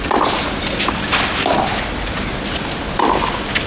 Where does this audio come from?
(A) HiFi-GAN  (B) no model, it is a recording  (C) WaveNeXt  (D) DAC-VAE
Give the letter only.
B